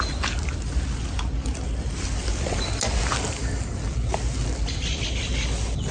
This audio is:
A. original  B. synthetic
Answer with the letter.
A